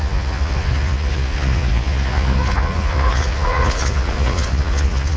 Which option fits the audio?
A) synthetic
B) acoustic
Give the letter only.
A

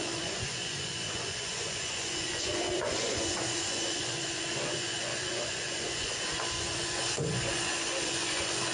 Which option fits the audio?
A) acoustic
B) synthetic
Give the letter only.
B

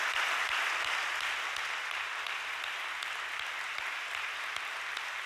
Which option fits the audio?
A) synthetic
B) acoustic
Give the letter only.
B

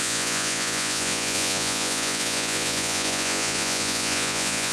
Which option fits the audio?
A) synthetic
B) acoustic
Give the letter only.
A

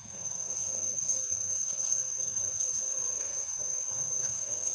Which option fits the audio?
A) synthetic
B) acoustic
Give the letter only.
A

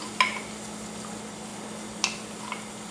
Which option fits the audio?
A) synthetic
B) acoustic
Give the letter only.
B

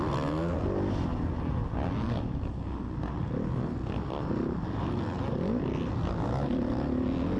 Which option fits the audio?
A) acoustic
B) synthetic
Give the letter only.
A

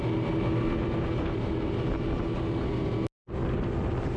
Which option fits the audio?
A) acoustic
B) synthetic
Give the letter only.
A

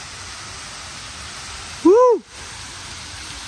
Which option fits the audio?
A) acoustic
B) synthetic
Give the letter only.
A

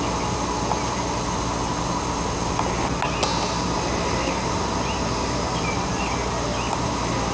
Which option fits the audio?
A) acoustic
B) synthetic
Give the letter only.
A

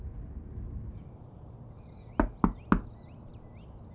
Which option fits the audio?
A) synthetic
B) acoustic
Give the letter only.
B